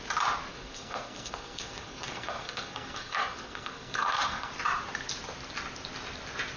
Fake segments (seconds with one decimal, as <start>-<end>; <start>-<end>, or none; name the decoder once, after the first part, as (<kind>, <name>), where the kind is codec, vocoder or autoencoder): 0.5-4.5 (codec, SNAC)